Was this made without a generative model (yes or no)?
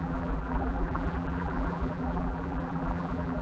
no